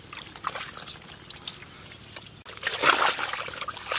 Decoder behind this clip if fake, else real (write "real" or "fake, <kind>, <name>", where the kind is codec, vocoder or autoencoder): real